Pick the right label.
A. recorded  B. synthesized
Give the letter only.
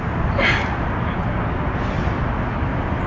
A